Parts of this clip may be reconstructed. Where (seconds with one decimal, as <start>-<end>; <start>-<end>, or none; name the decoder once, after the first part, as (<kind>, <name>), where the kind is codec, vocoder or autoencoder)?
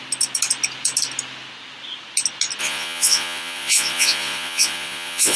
2.6-5.4 (vocoder, Vocos)